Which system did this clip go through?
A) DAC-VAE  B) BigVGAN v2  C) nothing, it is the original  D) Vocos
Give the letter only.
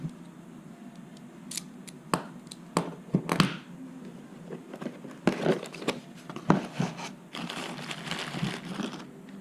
C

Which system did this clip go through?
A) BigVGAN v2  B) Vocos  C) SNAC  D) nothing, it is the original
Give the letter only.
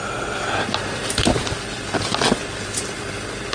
D